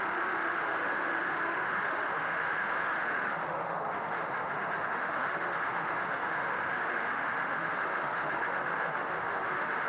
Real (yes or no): no